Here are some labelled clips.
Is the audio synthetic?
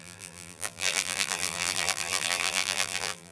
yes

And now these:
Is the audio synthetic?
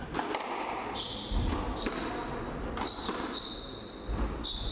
no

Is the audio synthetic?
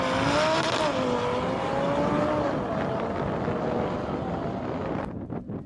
no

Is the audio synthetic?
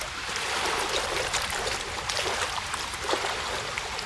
no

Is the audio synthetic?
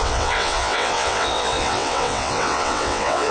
yes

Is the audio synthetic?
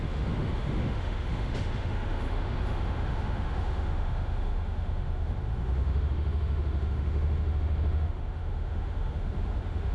yes